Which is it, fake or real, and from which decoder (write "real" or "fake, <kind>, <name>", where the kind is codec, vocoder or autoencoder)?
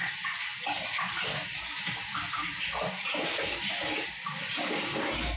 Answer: real